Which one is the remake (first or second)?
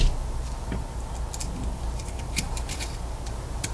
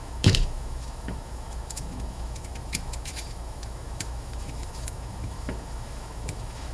second